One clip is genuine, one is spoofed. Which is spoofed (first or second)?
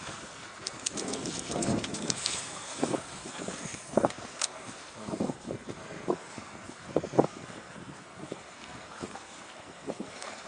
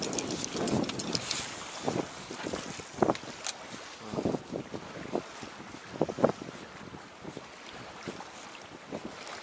first